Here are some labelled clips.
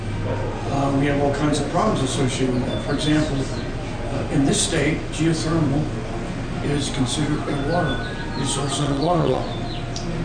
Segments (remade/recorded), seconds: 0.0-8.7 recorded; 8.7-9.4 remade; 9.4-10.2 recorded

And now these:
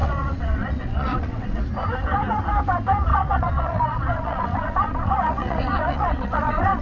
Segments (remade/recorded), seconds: 0.0-1.6 remade; 1.6-3.1 recorded; 3.1-6.8 remade

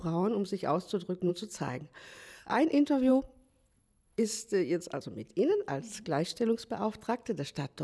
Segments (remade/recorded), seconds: 0.0-3.1 recorded; 3.1-4.2 remade; 4.2-7.8 recorded